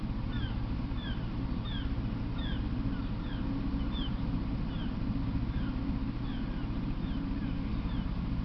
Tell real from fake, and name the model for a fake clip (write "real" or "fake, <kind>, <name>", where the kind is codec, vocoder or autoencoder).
real